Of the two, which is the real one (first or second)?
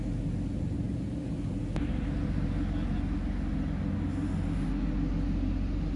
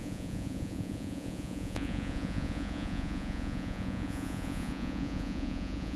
first